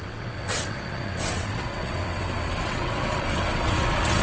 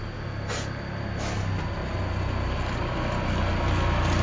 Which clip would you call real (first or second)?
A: second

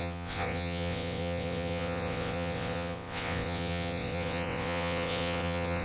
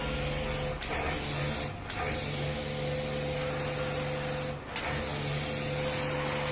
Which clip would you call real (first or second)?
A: second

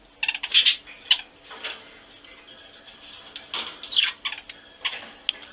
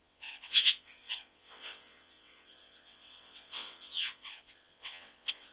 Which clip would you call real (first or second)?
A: first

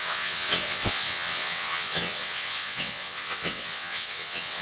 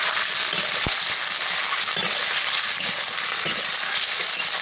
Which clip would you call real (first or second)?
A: second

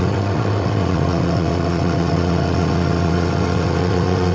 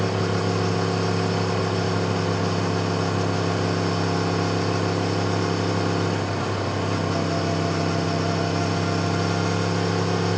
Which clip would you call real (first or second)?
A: second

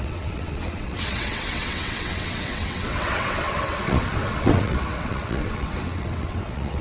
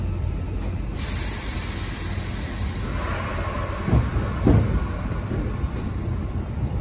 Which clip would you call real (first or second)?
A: second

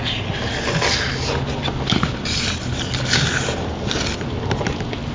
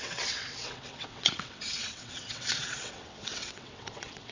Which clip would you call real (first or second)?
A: first